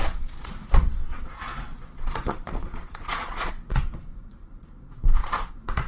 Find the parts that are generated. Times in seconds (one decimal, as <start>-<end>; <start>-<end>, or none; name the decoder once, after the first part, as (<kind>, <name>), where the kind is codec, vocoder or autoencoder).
0.0-5.9 (vocoder, Vocos)